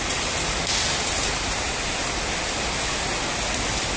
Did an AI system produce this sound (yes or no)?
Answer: no